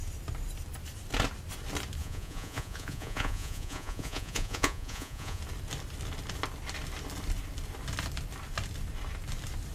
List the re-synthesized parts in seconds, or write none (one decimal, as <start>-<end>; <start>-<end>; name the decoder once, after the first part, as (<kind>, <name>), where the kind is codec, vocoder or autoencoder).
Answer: 2.0-5.4 (vocoder, Vocos)